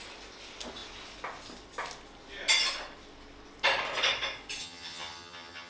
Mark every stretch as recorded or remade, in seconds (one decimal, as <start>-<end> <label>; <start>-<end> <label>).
0.0-4.6 recorded; 4.6-5.7 remade